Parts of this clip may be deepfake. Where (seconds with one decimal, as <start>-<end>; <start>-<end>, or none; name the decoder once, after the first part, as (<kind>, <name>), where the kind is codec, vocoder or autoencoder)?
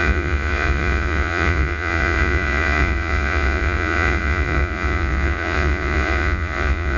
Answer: 0.0-7.0 (vocoder, Vocos)